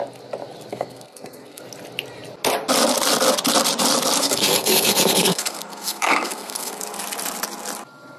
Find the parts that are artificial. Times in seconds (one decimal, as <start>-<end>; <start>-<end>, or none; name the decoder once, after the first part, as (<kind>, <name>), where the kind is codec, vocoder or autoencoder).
0.7-1.6 (codec, SNAC); 4.2-6.8